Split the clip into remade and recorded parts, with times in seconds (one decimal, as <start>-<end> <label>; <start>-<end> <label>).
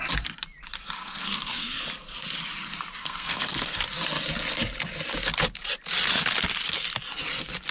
0.0-1.0 recorded; 1.0-1.8 remade; 1.8-3.0 recorded; 3.0-3.8 remade; 3.8-7.7 recorded